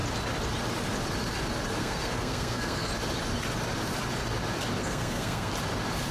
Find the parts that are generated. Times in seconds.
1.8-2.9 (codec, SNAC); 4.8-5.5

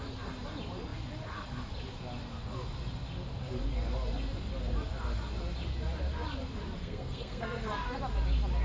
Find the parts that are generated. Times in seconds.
6.8-8.0 (codec, SNAC)

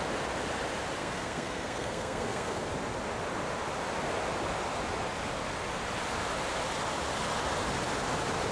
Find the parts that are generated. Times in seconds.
1.0-2.7 (codec, SNAC)

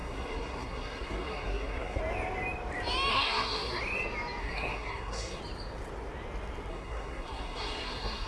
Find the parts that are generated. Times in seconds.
0.0-2.0 (codec, SNAC); 3.1-3.8; 4.4-5.4; 6.7-8.3